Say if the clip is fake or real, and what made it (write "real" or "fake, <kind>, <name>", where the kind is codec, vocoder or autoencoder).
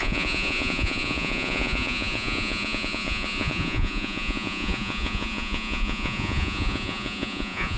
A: fake, vocoder, Vocos